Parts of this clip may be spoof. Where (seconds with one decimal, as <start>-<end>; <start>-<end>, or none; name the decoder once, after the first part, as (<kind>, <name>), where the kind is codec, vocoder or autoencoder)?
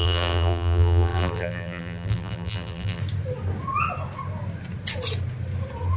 0.0-3.0 (vocoder, BigVGAN v2)